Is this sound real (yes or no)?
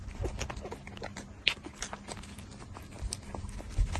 yes